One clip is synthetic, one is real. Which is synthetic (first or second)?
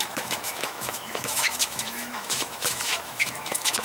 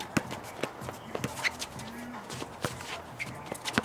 first